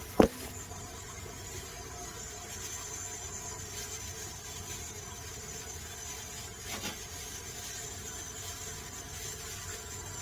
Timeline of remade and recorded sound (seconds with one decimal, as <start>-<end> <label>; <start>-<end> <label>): 0.0-10.2 recorded